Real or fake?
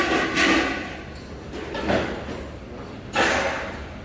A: real